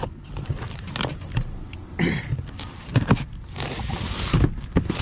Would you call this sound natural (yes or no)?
yes